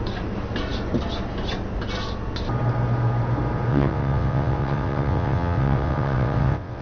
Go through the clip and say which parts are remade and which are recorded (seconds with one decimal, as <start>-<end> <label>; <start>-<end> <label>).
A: 0.0-3.7 recorded; 3.7-6.8 remade